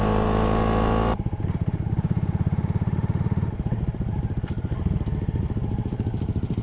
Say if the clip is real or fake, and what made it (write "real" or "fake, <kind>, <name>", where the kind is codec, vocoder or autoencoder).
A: real